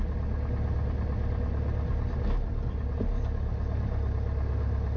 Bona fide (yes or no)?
yes